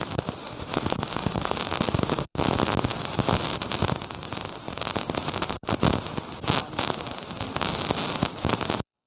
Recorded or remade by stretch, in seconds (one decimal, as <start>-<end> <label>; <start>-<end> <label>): 0.0-0.4 recorded; 0.4-1.6 remade; 1.6-9.1 recorded